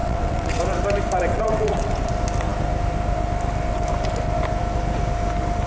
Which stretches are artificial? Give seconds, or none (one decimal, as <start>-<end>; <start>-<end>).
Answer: 0.0-0.6; 1.3-2.1